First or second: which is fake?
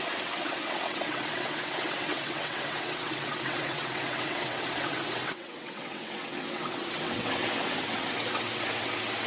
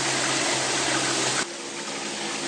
first